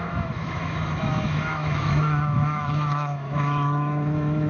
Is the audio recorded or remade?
remade